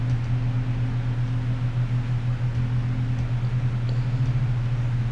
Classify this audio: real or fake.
real